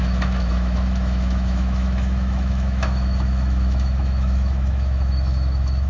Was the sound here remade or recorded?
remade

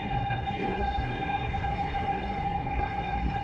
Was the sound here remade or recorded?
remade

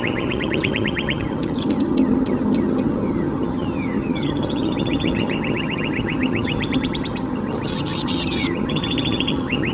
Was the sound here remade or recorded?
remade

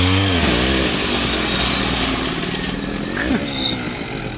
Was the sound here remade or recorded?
recorded